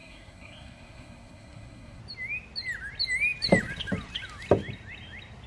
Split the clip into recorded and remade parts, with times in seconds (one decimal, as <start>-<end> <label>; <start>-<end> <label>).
0.0-2.0 remade; 2.0-5.5 recorded